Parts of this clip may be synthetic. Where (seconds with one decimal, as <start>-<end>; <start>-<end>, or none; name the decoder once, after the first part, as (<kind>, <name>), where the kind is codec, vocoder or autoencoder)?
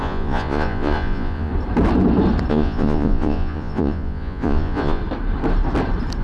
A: 0.0-1.5 (vocoder, Vocos); 2.5-5.0